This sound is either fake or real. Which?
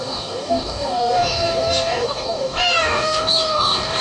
fake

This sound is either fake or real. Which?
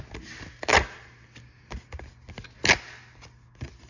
real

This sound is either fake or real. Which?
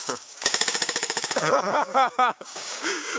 fake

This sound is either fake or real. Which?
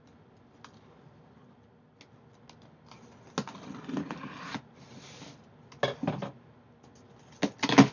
real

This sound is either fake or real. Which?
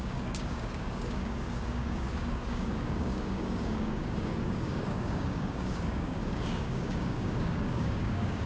fake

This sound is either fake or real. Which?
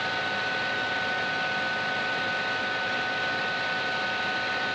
real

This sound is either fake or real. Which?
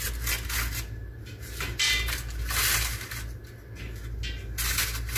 real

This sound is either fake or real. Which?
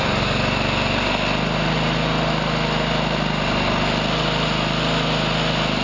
real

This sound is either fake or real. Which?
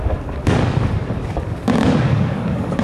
fake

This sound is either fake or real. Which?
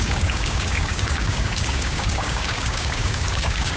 fake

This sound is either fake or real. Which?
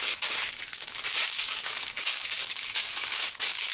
fake